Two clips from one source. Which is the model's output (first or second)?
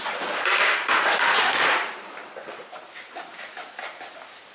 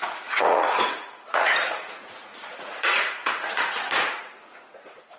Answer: second